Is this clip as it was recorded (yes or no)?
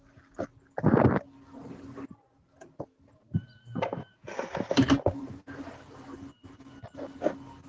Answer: yes